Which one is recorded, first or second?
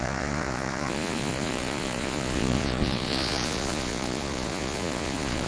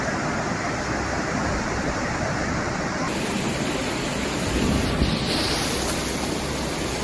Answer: second